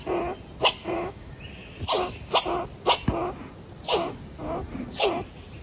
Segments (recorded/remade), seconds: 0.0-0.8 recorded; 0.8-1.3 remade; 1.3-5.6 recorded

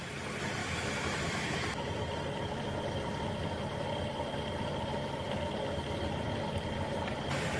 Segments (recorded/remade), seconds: 0.0-0.6 recorded; 0.6-2.0 remade; 2.0-7.6 recorded

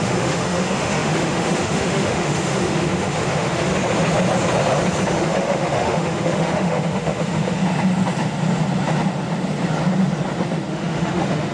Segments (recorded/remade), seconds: 0.0-3.7 remade; 3.7-5.1 recorded; 5.1-7.6 remade; 7.6-10.7 recorded; 10.7-11.5 remade

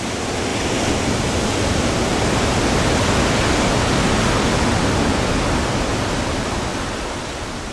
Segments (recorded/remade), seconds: 0.0-7.7 recorded

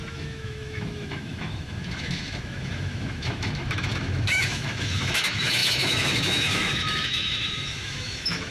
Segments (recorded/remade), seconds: 0.0-8.5 remade